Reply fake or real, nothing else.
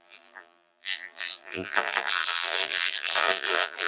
fake